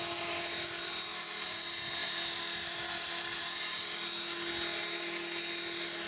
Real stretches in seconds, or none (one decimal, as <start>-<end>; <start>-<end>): 0.0-1.1; 1.6-6.1